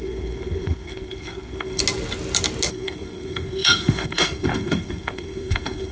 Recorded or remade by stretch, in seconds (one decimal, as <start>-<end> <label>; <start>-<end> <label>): 0.0-1.8 remade; 1.8-2.7 recorded; 2.7-5.9 remade